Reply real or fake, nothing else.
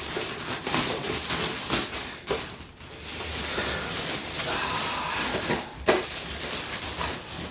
real